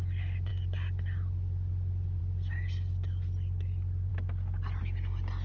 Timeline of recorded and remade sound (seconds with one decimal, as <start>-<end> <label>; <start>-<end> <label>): 0.0-5.4 recorded